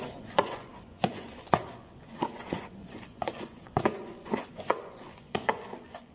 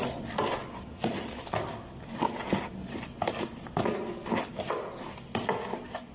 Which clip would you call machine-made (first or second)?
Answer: first